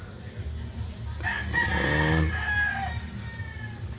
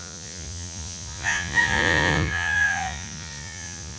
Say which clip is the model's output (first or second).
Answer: second